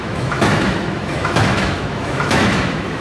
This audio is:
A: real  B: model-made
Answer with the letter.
B